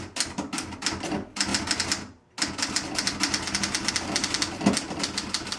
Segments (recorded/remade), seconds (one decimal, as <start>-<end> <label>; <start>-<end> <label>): 0.0-5.6 recorded